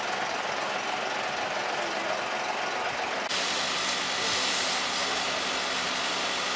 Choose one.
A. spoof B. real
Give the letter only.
B